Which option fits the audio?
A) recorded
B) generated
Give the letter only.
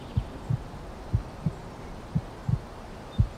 A